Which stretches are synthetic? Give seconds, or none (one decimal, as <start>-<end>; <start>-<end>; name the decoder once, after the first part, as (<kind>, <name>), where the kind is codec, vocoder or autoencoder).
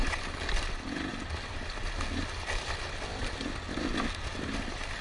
none